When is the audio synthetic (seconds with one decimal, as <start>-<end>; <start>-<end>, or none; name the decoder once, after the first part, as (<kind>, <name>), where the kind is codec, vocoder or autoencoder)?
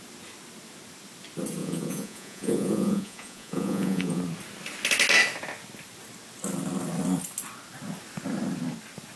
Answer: 1.6-4.2 (vocoder, Vocos)